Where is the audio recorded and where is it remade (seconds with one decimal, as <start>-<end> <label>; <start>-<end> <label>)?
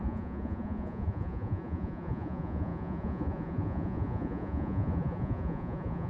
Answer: 0.0-6.1 remade